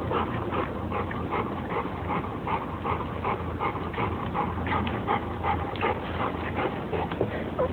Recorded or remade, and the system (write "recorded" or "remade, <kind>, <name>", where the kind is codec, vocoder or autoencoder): recorded